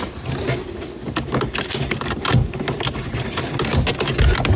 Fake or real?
real